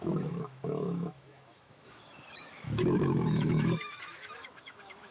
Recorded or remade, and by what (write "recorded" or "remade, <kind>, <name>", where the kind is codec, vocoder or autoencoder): remade, autoencoder, DAC-VAE